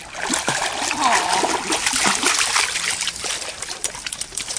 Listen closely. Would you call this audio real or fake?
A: real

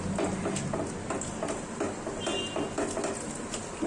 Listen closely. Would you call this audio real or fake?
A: real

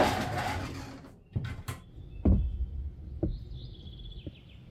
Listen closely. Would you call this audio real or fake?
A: real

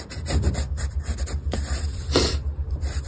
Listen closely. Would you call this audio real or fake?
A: fake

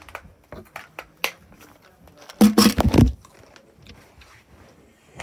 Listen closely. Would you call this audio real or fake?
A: real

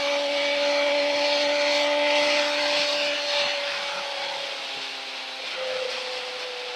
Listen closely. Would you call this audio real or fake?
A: real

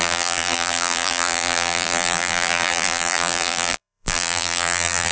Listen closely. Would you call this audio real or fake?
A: fake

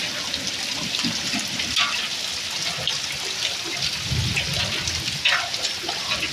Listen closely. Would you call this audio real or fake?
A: real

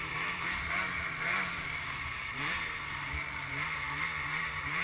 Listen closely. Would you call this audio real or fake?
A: fake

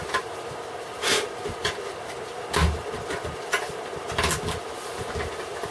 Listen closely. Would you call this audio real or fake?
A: real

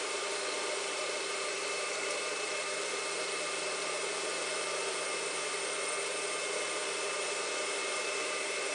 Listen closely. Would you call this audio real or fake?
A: fake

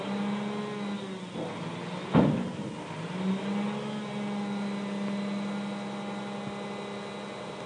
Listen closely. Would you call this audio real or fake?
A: real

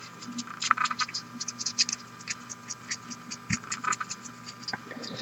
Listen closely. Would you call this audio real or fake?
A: real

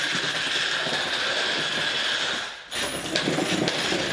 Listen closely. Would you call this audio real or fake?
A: real